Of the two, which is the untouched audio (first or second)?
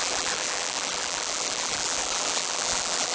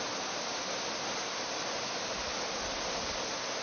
second